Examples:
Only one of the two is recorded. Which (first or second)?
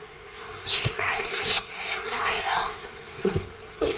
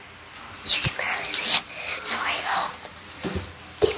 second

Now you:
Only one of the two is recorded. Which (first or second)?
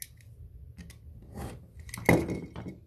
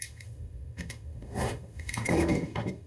first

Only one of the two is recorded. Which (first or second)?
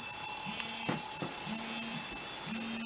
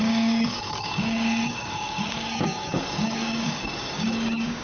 first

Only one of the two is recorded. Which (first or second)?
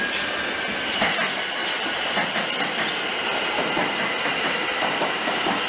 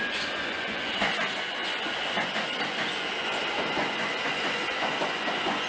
first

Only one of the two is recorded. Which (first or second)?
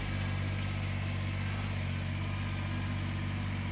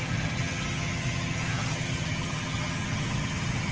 first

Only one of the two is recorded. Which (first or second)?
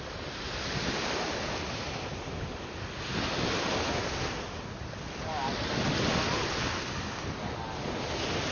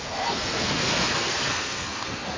first